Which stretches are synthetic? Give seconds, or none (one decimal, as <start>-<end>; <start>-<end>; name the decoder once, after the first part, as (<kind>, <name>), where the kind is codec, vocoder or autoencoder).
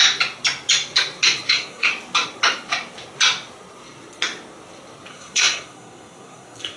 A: 1.5-1.9 (codec, SNAC); 5.1-6.8